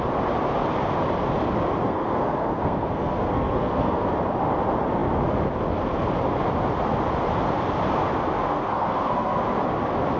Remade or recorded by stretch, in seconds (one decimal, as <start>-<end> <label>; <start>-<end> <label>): 0.0-1.8 recorded; 1.8-4.0 remade; 4.0-8.5 recorded; 8.5-9.4 remade; 9.4-10.2 recorded